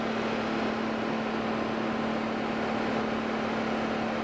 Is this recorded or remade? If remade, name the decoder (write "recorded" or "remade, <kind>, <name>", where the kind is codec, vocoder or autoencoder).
recorded